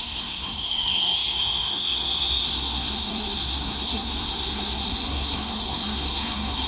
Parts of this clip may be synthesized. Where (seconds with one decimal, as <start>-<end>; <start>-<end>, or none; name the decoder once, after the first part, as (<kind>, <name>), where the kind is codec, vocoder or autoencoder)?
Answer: 0.0-6.7 (codec, SNAC)